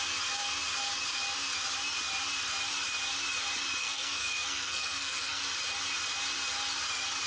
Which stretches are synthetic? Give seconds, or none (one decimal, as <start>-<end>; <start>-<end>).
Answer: 3.8-5.4